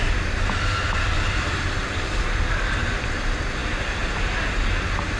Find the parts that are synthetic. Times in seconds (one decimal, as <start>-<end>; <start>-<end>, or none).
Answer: none